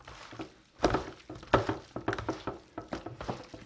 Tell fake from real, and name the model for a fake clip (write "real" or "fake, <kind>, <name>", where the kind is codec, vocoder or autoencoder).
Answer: real